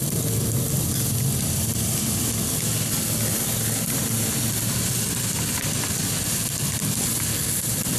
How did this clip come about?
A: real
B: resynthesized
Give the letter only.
A